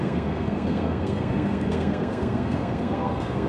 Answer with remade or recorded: remade